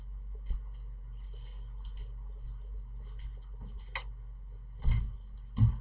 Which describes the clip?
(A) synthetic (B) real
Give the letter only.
B